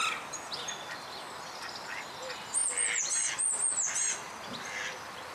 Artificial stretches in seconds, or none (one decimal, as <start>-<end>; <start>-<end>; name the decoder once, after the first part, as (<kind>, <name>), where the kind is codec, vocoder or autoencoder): none